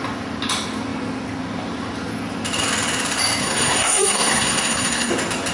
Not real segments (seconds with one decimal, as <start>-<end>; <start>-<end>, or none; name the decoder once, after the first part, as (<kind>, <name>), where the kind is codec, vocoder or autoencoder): 3.4-5.1 (codec, SNAC)